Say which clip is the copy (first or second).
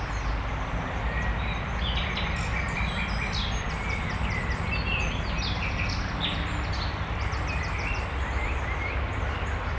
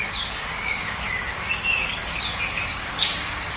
second